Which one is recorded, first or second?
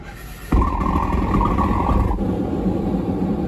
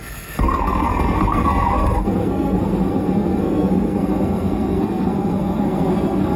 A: first